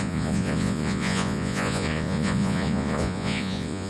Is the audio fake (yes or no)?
yes